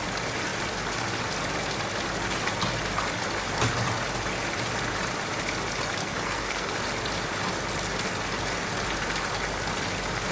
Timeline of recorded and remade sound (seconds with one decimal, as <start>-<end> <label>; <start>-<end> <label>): 0.0-6.0 recorded; 6.0-6.7 remade; 6.7-10.3 recorded